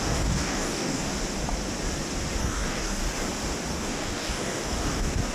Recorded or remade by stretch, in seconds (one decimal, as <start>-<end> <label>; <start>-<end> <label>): 0.0-1.1 remade; 1.1-2.4 recorded; 2.4-3.0 remade; 3.0-3.7 recorded; 3.7-5.3 remade